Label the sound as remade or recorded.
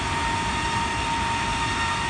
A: recorded